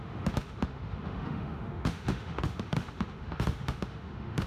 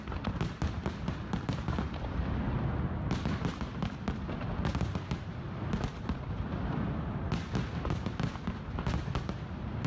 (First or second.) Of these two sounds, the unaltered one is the second